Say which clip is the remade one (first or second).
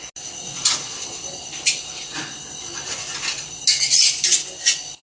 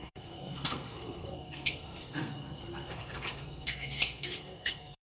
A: second